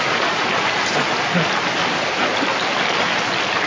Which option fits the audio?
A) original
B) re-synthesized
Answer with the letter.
A